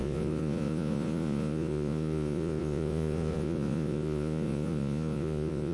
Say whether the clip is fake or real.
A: fake